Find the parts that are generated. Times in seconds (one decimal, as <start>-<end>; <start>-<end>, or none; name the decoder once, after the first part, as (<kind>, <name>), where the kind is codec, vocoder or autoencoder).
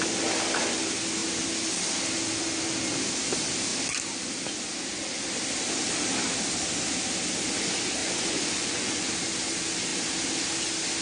8.0-9.1 (vocoder, Vocos)